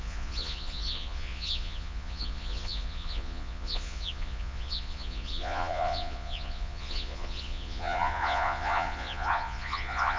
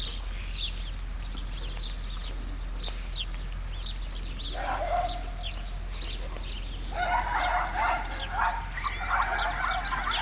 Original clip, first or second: second